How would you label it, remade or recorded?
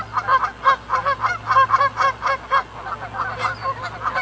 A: recorded